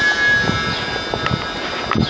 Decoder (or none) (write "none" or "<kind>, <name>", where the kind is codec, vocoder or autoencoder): none